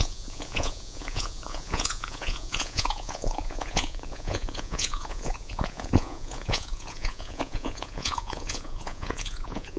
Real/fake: fake